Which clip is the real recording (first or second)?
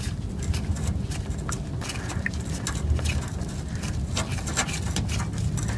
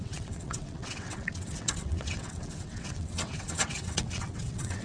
first